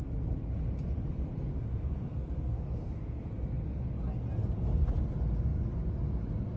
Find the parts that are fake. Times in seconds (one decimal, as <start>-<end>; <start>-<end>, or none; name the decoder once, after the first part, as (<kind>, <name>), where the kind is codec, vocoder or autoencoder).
1.5-3.3 (codec, SNAC)